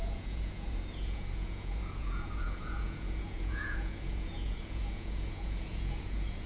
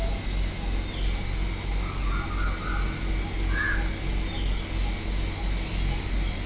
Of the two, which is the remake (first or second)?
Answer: first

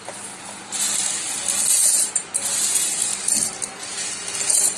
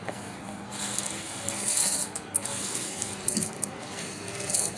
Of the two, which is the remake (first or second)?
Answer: second